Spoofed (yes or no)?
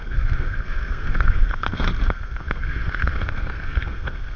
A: yes